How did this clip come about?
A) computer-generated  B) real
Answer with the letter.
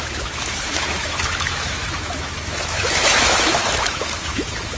A